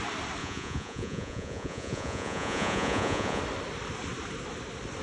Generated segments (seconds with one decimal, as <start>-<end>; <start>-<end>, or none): 0.4-3.4